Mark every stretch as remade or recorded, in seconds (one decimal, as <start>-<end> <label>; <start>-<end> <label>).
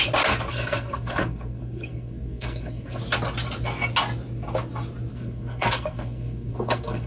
0.0-0.5 recorded; 0.5-3.0 remade; 3.0-5.1 recorded; 5.1-7.1 remade